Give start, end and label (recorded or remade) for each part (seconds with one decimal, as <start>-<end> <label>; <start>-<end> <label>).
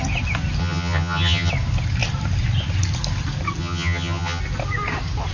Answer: 0.0-0.6 recorded; 0.6-1.5 remade; 1.5-3.6 recorded; 3.6-4.4 remade; 4.4-5.3 recorded